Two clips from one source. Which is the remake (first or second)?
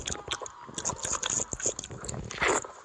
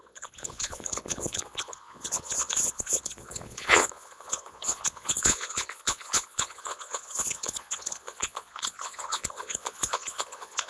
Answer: second